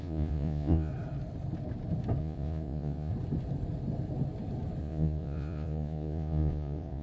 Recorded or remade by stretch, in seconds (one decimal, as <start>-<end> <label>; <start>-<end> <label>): 0.0-0.9 remade; 0.9-2.2 recorded; 2.2-3.1 remade; 3.1-4.8 recorded; 4.8-7.0 remade